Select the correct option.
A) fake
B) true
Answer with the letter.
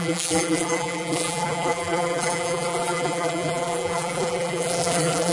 A